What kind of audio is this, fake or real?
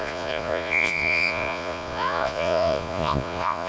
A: fake